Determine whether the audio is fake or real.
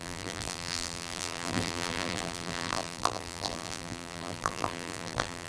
fake